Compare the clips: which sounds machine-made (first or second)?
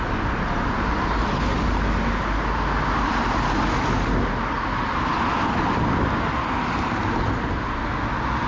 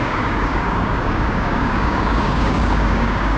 second